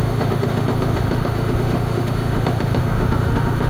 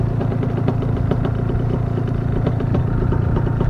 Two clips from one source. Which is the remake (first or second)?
first